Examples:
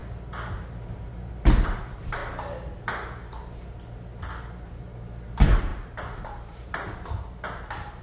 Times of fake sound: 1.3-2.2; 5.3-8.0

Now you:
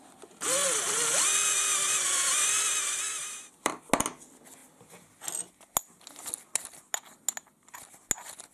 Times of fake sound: 1.7-3.8

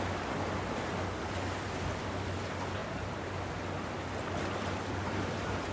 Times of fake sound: 2.8-3.5

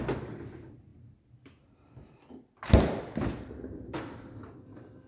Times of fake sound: 0.9-4.0

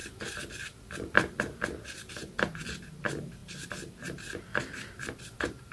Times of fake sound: 0.0-1.4; 3.4-4.7